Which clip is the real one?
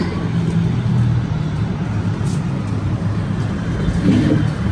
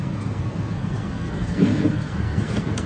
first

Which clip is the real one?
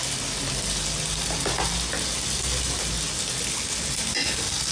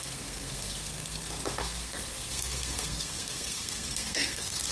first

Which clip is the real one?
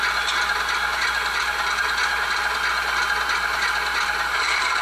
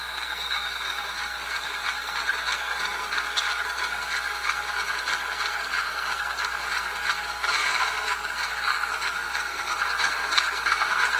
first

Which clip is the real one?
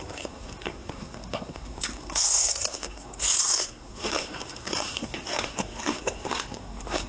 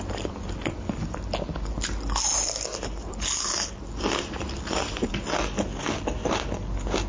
second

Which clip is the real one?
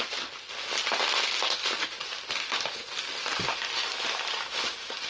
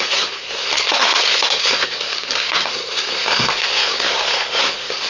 first